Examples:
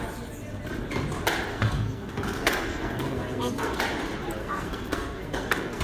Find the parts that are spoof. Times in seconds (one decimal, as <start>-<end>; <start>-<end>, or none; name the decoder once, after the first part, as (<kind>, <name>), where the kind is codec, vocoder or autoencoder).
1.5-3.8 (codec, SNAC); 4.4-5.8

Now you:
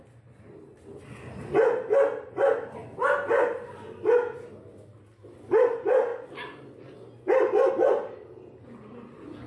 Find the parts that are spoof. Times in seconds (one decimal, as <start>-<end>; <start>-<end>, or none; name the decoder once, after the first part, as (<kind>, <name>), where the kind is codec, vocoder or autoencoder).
none

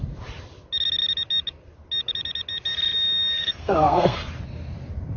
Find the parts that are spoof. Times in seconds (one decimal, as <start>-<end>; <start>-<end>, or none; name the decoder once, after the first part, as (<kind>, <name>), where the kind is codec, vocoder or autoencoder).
3.4-4.2 (codec, SNAC)

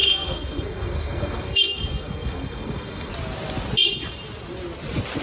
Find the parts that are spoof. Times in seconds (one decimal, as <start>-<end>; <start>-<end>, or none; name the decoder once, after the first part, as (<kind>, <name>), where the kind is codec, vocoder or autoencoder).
0.0-3.1 (codec, SNAC)